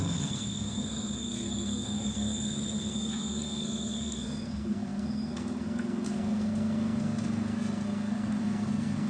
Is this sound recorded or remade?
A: remade